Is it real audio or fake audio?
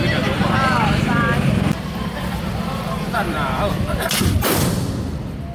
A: fake